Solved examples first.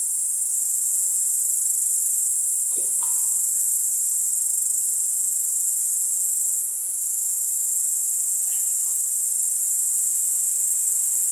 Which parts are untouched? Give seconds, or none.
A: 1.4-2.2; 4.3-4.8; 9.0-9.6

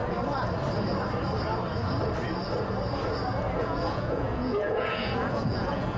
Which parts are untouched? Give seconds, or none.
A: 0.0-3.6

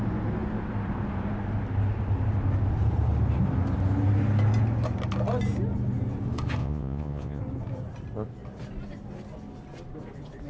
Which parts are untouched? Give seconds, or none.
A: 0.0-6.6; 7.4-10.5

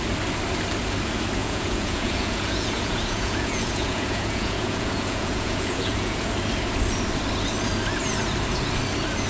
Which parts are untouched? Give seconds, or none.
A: 0.0-1.4; 6.3-9.3